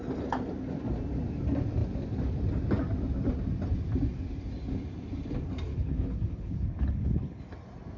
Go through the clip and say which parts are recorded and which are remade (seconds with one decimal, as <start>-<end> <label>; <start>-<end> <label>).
0.0-5.7 recorded; 5.7-7.4 remade; 7.4-8.0 recorded